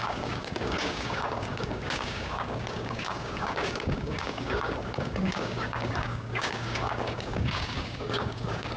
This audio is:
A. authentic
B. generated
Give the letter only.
B